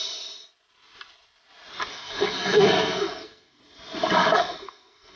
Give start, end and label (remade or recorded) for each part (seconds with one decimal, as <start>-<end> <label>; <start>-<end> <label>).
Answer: 0.0-1.9 recorded; 1.9-3.6 remade; 3.6-4.2 recorded; 4.2-5.2 remade